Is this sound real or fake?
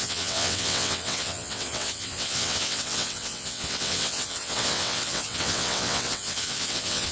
fake